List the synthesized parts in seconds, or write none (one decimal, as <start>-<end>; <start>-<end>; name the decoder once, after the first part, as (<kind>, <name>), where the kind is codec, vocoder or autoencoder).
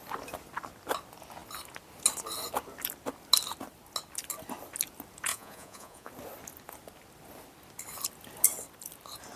5.3-6.1 (vocoder, Vocos)